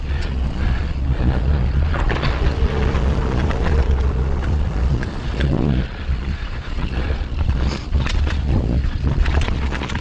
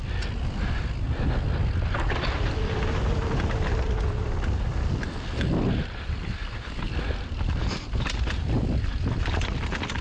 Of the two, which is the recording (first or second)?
second